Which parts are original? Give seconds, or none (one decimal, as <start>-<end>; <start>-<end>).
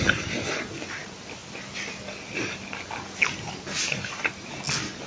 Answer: 0.0-5.1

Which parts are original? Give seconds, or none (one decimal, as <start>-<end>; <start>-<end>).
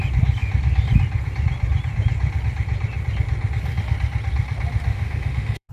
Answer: 0.0-4.9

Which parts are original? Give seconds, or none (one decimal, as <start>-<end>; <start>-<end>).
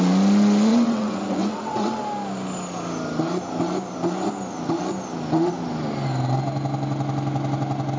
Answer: 0.0-0.7; 2.0-8.0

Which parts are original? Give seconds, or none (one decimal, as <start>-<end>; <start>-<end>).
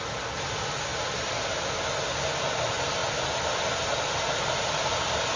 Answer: 0.0-5.4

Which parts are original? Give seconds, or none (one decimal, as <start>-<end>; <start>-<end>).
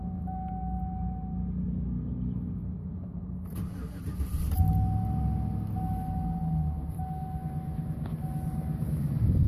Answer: 0.0-9.5